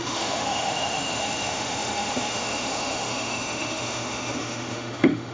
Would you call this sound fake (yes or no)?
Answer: yes